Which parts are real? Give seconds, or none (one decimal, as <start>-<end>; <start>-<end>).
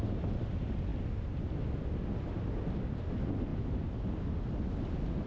0.0-5.3